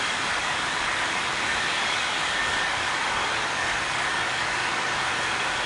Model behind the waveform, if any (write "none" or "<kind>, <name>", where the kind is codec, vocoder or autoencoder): codec, DAC